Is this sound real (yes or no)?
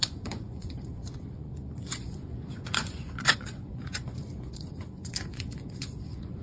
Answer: no